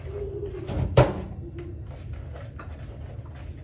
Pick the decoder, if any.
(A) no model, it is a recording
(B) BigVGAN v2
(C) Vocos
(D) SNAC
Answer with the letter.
A